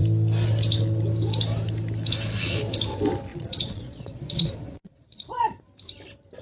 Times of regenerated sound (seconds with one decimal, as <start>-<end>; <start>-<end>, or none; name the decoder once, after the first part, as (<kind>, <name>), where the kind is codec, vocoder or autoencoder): 3.3-5.6 (vocoder, Vocos)